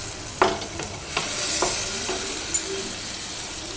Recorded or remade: recorded